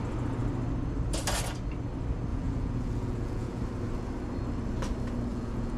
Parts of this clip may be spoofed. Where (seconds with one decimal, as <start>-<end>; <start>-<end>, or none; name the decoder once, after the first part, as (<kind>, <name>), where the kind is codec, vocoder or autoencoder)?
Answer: 2.3-3.6 (vocoder, Vocos); 5.3-5.8